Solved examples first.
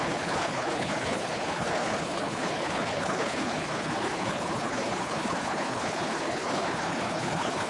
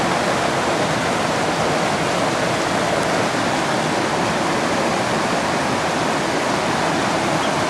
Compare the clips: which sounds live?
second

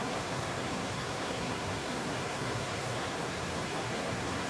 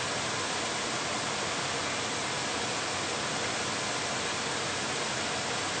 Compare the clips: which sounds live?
second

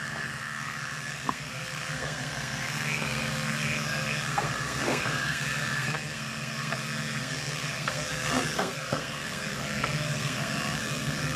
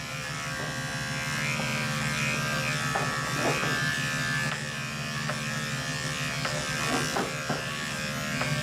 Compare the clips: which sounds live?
second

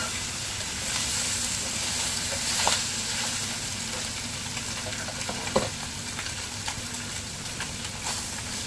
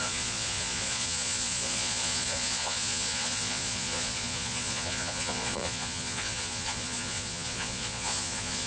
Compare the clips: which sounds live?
first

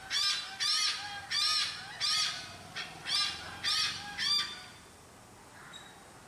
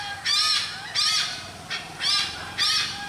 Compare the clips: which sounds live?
first